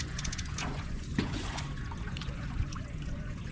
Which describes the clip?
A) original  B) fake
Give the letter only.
B